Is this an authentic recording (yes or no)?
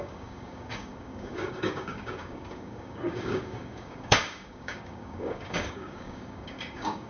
no